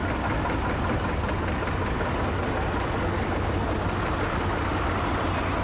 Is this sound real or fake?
real